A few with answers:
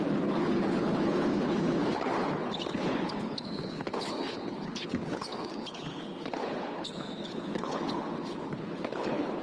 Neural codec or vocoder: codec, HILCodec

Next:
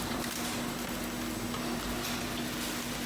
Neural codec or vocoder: none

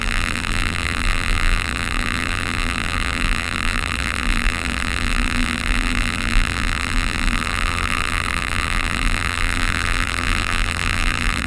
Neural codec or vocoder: vocoder, BigVGAN v2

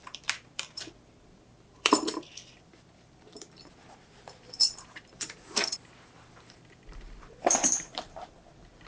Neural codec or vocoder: vocoder, BigVGAN v2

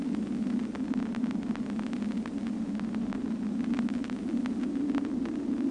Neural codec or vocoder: none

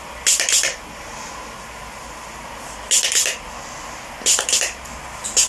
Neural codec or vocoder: none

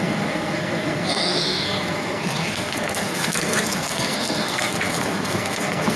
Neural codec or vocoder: codec, SNAC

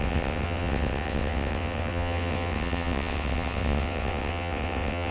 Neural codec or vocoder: vocoder, WaveNeXt